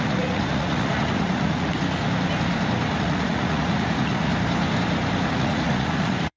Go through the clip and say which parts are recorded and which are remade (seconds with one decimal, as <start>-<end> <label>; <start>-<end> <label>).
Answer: 0.0-1.7 remade; 1.7-3.0 recorded; 3.0-4.3 remade; 4.3-5.3 recorded; 5.3-6.4 remade